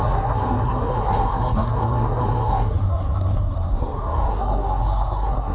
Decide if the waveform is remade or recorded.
remade